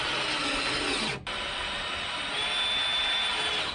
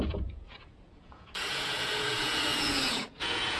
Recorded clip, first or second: first